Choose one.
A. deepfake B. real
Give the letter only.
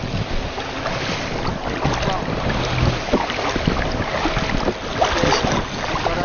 B